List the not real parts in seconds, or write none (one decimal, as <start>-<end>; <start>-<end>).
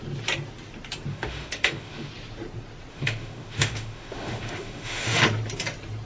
1.1-2.1; 2.9-5.2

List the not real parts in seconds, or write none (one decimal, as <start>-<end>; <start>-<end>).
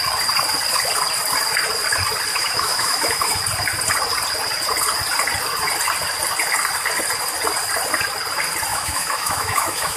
2.3-3.4; 8.7-10.0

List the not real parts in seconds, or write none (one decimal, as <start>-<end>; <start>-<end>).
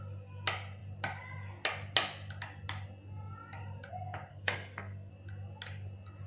4.3-5.1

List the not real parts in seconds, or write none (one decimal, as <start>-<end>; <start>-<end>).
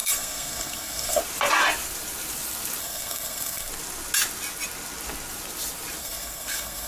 0.0-1.2; 2.8-3.7; 6.0-6.9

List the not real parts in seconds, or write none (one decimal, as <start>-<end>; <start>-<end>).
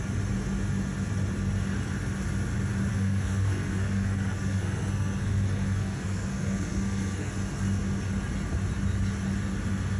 2.9-7.3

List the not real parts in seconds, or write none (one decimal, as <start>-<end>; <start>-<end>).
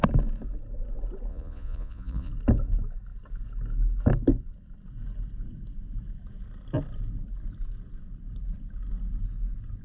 1.3-2.3